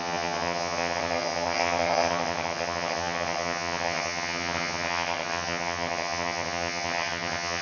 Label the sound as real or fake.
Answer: fake